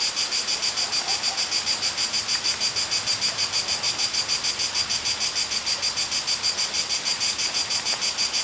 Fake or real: real